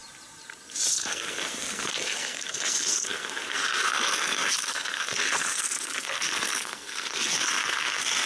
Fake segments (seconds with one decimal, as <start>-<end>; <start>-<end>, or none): 0.9-8.3